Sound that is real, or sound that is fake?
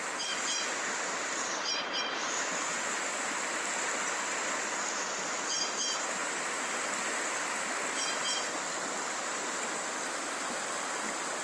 real